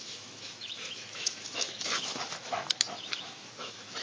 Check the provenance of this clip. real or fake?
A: fake